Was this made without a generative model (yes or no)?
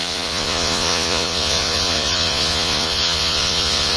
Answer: no